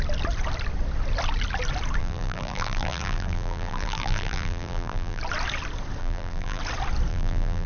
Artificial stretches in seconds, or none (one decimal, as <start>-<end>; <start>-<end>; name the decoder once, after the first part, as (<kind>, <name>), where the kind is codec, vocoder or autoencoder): 2.0-5.2 (vocoder, BigVGAN v2); 6.0-6.6; 7.1-7.7